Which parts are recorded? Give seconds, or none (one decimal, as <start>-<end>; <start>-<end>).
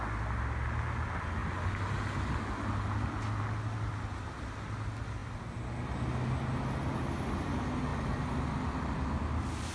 0.0-9.7